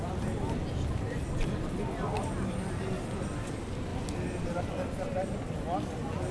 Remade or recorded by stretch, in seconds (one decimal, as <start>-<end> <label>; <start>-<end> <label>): 0.0-0.4 recorded; 0.4-1.2 remade; 1.2-3.9 recorded; 3.9-4.6 remade; 4.6-6.3 recorded